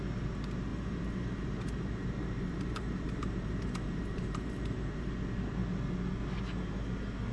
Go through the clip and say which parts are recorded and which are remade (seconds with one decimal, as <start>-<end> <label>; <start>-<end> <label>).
0.0-0.7 recorded; 0.7-5.1 remade; 5.1-7.3 recorded